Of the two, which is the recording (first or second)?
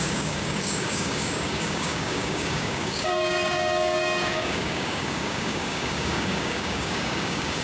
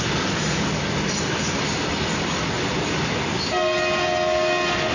second